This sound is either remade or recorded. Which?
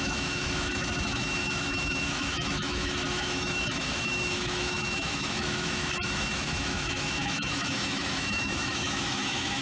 remade